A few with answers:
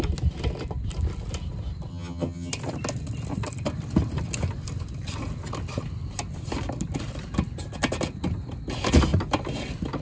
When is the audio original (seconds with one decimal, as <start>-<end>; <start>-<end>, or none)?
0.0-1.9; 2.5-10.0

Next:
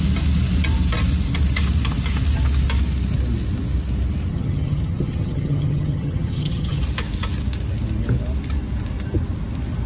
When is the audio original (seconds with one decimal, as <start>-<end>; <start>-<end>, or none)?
0.0-4.3; 6.8-9.9

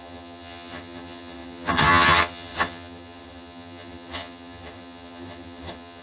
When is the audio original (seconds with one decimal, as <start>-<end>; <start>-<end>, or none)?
none

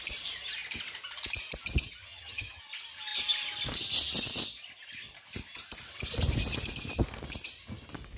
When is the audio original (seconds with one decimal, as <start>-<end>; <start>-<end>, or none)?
0.0-2.0; 2.6-8.2

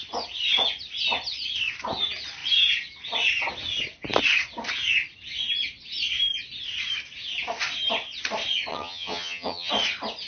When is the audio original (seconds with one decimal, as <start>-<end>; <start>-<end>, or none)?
0.0-8.7; 9.7-10.3

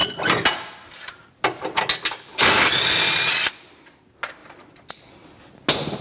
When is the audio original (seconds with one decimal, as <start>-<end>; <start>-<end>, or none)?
0.0-6.0

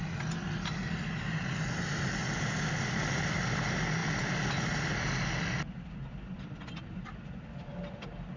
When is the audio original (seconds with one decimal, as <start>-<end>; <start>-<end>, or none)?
0.0-8.4

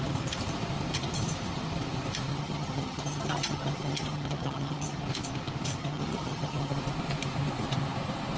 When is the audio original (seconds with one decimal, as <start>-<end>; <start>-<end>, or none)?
0.0-2.3; 5.0-5.8; 6.8-8.4